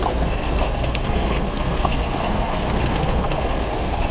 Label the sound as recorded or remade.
remade